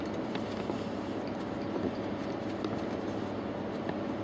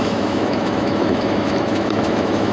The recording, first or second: first